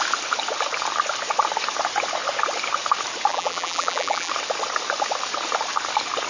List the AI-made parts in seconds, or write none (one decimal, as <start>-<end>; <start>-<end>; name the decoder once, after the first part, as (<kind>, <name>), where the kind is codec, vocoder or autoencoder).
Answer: 3.3-4.3 (vocoder, BigVGAN v2)